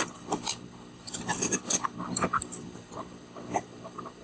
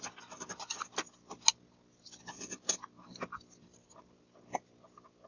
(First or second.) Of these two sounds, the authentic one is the second